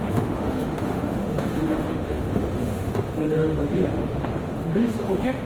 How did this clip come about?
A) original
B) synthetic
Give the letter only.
B